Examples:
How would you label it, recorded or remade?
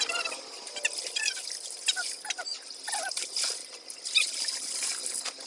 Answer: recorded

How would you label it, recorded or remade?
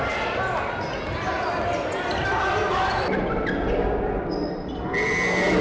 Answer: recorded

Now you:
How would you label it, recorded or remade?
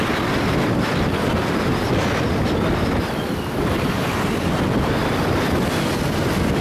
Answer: recorded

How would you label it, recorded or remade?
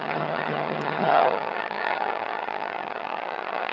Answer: remade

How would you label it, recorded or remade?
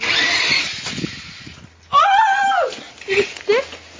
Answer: recorded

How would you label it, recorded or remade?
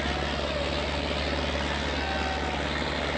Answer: recorded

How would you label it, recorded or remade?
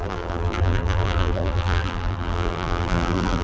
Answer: remade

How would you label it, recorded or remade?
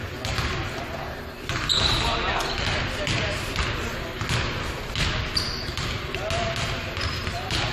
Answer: recorded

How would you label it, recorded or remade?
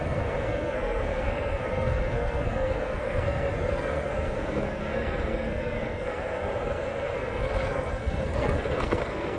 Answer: remade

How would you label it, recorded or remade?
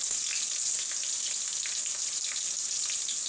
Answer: recorded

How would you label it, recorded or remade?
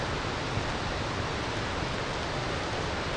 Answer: recorded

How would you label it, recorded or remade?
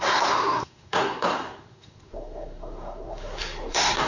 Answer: remade